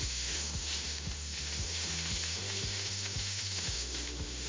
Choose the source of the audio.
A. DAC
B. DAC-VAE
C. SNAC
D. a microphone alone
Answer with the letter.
B